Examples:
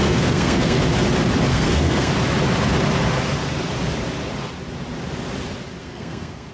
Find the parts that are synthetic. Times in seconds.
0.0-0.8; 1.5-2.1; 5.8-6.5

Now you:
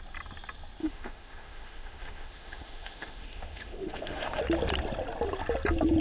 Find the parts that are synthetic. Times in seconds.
0.8-4.4

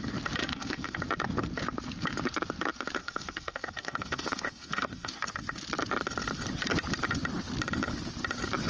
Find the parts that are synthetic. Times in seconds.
0.4-1.0; 3.0-5.1

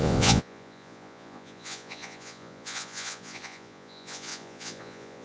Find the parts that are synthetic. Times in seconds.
0.0-5.2

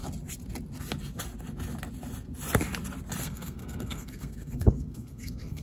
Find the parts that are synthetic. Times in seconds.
3.2-5.6